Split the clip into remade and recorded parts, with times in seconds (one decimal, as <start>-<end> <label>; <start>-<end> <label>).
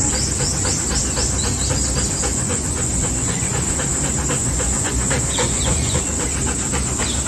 0.0-2.3 recorded; 2.3-3.8 remade; 3.8-4.4 recorded; 4.4-6.0 remade; 6.0-7.3 recorded